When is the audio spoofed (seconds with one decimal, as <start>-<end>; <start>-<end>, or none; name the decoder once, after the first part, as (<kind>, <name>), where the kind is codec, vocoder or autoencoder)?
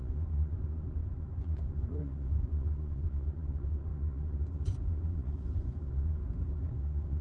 0.0-6.2 (vocoder, Vocos); 6.8-7.2